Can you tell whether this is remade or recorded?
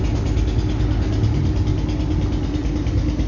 recorded